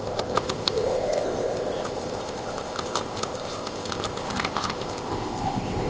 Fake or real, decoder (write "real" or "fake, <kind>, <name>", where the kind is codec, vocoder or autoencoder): fake, codec, ZipCodec